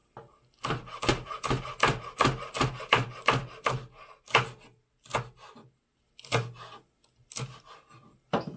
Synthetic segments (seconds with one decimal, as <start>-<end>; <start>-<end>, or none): none